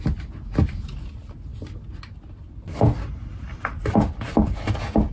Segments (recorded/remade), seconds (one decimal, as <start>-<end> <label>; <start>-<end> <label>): 0.0-5.1 recorded